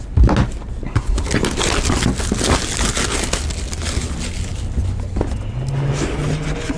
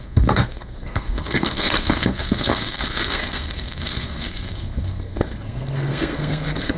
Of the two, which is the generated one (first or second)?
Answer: second